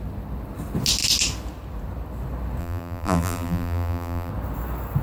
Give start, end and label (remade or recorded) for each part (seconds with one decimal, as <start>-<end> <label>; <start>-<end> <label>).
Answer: 0.0-2.6 recorded; 2.6-4.3 remade; 4.3-5.0 recorded